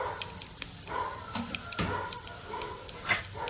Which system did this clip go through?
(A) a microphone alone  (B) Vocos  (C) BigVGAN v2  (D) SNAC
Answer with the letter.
A